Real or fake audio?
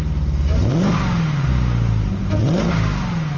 real